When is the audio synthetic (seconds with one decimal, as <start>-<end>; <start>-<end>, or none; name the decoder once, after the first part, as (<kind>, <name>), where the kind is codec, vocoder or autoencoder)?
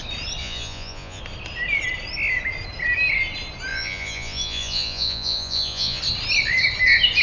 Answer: 0.4-1.2 (vocoder, Vocos); 3.7-6.0